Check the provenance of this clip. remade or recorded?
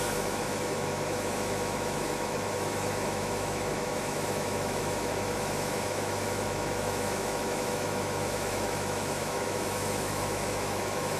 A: remade